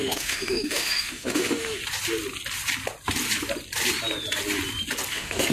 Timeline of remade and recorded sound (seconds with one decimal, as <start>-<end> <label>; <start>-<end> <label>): 0.0-1.8 remade; 1.8-5.1 recorded; 5.1-5.5 remade